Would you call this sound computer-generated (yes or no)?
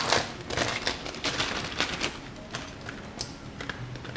no